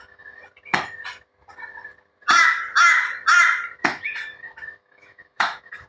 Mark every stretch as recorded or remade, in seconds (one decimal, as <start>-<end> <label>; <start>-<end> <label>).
0.0-0.4 remade; 0.4-3.9 recorded; 3.9-5.9 remade